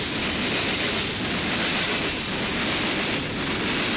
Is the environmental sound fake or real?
real